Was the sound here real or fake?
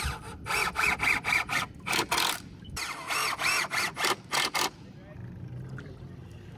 real